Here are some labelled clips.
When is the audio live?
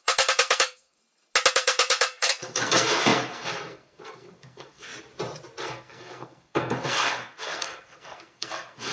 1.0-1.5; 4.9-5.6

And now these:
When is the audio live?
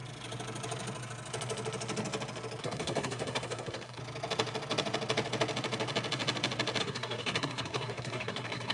0.0-2.6; 4.0-6.8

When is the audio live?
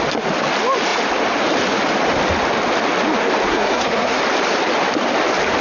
0.0-3.5; 4.2-5.6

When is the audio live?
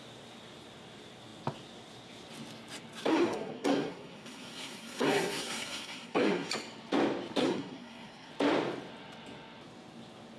0.0-3.1; 6.5-7.4; 8.3-10.4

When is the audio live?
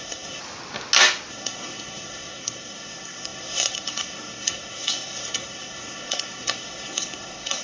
0.4-1.3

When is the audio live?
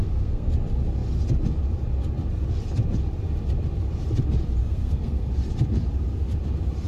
0.5-4.6; 5.3-6.9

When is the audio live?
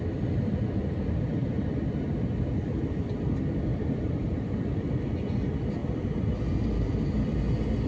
0.0-7.9